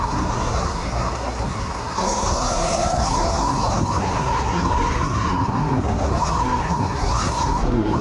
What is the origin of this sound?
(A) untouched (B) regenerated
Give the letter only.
B